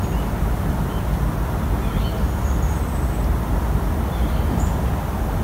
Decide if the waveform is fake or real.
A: real